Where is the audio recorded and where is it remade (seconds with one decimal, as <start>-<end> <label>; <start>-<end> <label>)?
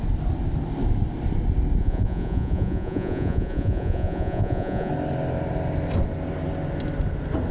0.0-1.8 recorded; 1.8-4.9 remade; 4.9-7.5 recorded